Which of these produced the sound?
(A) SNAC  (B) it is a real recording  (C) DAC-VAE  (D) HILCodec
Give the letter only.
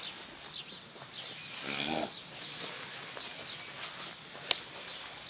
B